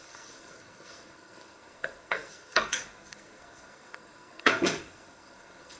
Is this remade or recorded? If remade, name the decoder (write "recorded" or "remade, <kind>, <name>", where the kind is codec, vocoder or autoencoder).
remade, codec, SNAC